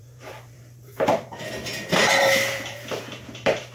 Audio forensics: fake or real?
fake